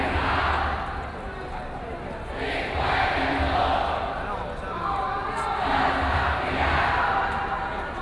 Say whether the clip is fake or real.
real